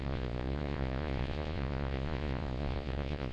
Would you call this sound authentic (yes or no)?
no